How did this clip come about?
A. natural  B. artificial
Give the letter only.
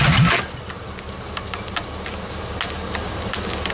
A